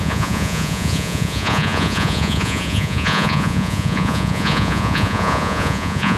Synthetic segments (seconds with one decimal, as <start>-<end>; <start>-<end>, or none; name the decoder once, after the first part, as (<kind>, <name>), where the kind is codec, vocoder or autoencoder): 0.0-6.2 (vocoder, Vocos)